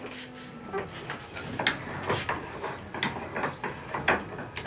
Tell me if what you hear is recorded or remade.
recorded